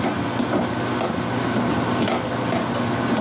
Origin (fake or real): real